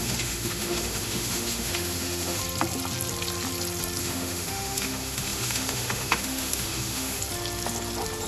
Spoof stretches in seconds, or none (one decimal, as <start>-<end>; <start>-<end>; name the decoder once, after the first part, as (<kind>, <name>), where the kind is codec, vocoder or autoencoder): 0.0-2.4 (autoencoder, DAC-VAE); 4.0-7.2